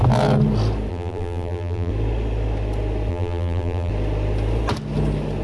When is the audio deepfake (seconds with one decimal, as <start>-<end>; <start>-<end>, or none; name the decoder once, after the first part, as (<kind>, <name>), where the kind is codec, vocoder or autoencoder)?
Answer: 0.9-1.9 (vocoder, BigVGAN v2); 3.1-3.9